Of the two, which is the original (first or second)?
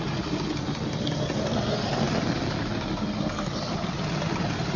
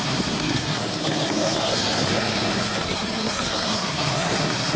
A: first